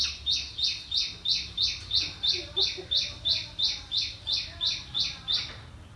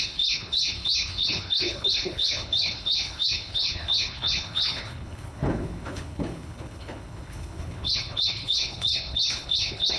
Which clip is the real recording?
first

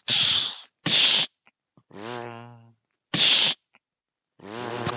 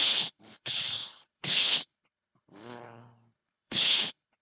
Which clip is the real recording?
first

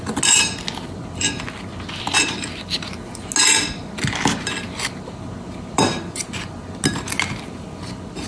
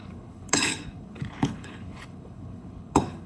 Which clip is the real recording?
first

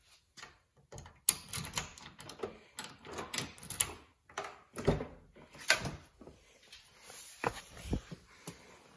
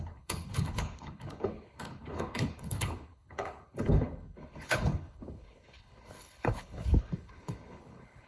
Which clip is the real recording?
first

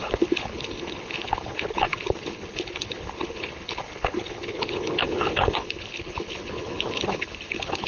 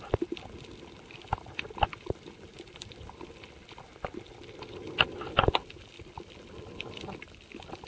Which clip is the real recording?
second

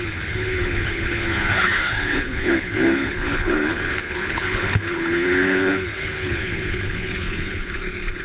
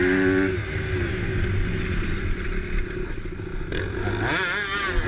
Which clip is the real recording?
second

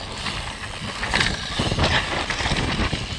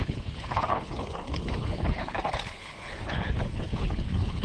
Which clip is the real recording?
first